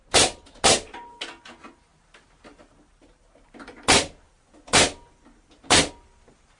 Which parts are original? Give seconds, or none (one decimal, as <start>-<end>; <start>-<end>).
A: 0.0-6.6